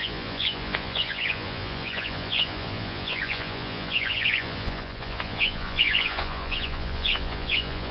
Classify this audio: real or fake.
fake